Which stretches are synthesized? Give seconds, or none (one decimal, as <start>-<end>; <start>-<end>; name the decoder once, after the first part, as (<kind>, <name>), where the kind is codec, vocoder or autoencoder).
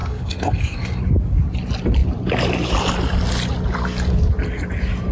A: 0.0-1.0 (codec, SNAC)